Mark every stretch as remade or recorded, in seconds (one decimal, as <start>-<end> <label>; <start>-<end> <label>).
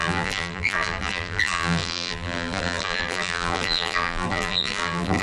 0.0-5.2 remade